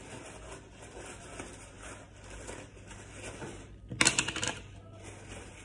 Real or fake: real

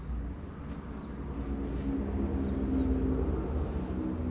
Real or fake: real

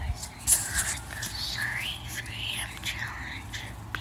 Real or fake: real